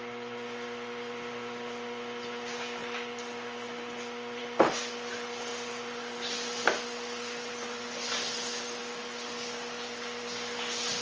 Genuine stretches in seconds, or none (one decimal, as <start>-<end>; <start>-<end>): 0.0-11.0